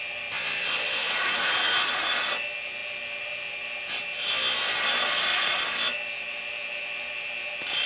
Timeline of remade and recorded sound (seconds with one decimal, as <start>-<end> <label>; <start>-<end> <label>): 0.0-1.0 recorded; 1.0-2.1 remade; 2.1-7.9 recorded